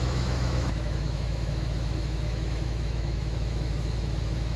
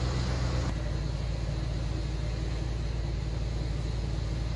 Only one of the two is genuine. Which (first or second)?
second